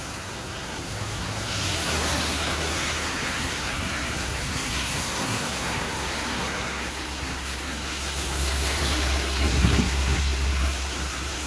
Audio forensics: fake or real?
fake